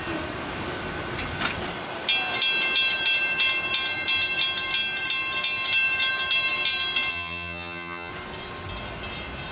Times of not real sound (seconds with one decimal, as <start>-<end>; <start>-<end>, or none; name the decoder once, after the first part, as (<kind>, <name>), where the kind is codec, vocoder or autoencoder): 7.1-8.1 (vocoder, HiFi-GAN)